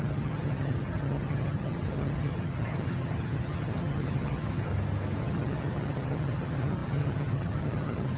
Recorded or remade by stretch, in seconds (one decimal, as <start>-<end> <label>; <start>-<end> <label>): 0.0-4.7 remade; 4.7-5.2 recorded; 5.2-8.2 remade